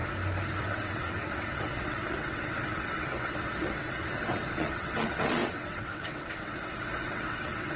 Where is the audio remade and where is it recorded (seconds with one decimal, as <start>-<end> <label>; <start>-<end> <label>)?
0.0-0.6 recorded; 0.6-7.8 remade

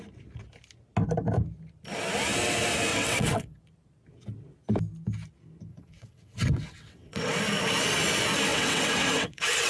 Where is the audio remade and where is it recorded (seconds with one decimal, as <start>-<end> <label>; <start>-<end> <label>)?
0.0-2.9 recorded; 2.9-3.6 remade; 3.6-5.7 recorded; 5.7-7.4 remade; 7.4-8.5 recorded; 8.5-9.7 remade

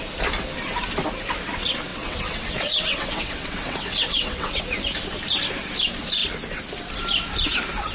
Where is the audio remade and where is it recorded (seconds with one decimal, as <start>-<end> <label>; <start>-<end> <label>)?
0.0-1.9 recorded; 1.9-4.6 remade; 4.6-7.9 recorded

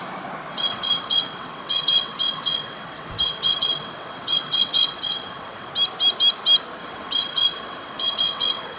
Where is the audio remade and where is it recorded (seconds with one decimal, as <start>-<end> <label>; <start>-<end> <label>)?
0.0-0.5 recorded; 0.5-5.7 remade; 5.7-6.8 recorded; 6.8-8.8 remade

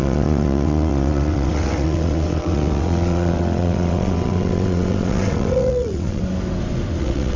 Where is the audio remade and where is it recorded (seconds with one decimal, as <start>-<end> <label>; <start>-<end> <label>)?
0.0-6.2 remade; 6.2-7.0 recorded; 7.0-7.4 remade

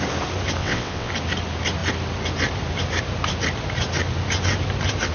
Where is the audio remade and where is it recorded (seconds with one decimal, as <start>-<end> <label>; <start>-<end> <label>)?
0.0-0.6 recorded; 0.6-1.1 remade; 1.1-5.1 recorded